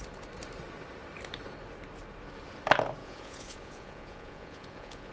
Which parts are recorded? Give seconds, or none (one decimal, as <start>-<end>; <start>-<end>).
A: 0.0-3.0